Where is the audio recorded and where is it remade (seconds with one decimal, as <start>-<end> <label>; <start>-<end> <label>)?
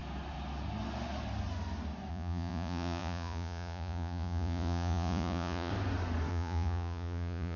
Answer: 0.0-2.1 recorded; 2.1-5.7 remade; 5.7-6.3 recorded; 6.3-7.6 remade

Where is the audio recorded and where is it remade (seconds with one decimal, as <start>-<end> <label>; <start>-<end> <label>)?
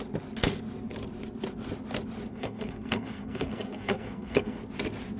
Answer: 0.0-2.3 recorded; 2.3-4.6 remade; 4.6-5.2 recorded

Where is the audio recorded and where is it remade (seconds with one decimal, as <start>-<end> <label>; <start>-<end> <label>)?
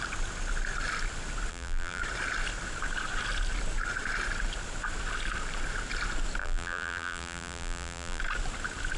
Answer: 0.0-1.5 recorded; 1.5-2.0 remade; 2.0-6.4 recorded; 6.4-8.2 remade; 8.2-9.0 recorded